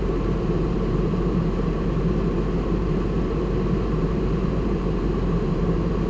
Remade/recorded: remade